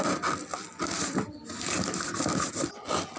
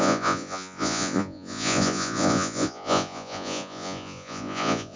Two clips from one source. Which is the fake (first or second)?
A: second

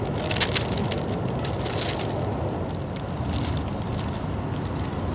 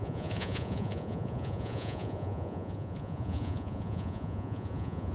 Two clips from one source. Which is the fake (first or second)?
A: second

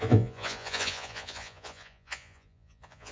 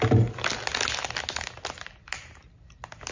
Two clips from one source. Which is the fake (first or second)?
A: first